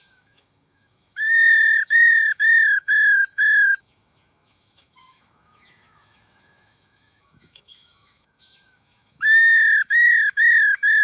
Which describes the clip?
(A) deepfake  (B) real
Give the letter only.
A